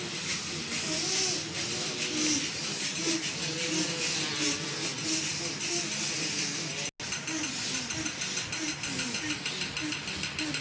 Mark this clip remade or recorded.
recorded